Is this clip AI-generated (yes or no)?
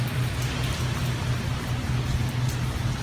no